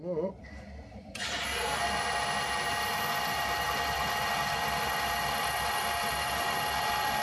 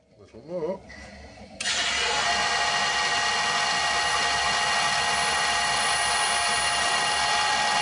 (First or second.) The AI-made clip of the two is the first